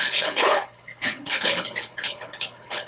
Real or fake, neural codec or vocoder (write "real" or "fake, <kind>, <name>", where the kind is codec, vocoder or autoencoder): fake, codec, HILCodec